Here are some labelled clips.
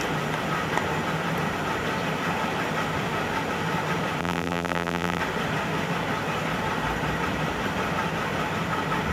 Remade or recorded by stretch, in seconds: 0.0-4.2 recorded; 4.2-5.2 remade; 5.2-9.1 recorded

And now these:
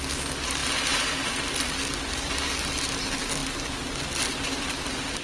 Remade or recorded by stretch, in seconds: 0.0-5.2 recorded

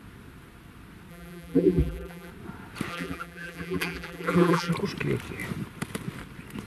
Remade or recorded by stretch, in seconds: 0.0-1.1 recorded; 1.1-2.3 remade; 2.3-2.9 recorded; 2.9-4.7 remade; 4.7-6.7 recorded

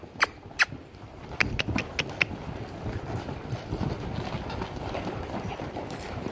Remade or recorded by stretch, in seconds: 0.0-1.2 remade; 1.2-5.0 recorded; 5.0-6.3 remade

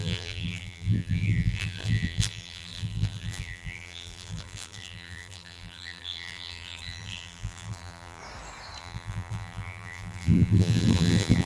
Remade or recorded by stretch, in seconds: 0.0-8.2 remade; 8.2-8.8 recorded; 8.8-11.4 remade

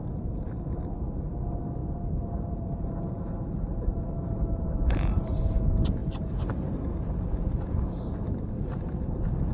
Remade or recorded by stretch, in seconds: 0.0-1.8 recorded; 1.8-5.4 remade; 5.4-6.0 recorded; 6.0-6.8 remade; 6.8-9.5 recorded

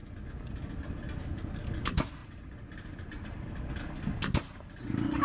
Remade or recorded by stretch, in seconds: 0.0-2.2 recorded; 2.2-3.5 remade; 3.5-5.2 recorded

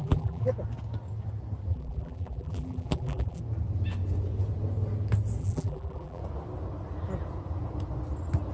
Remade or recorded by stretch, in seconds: 0.0-0.5 remade; 0.5-1.7 recorded; 1.7-3.4 remade; 3.4-5.4 recorded; 5.4-6.2 remade; 6.2-8.5 recorded